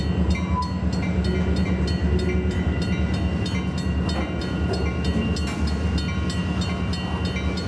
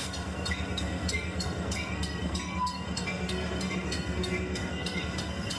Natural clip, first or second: first